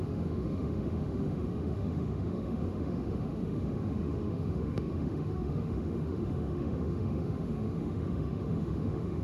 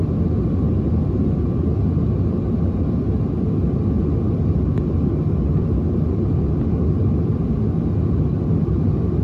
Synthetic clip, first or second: first